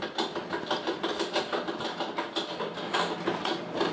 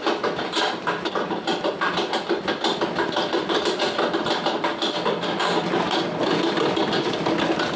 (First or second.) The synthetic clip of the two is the second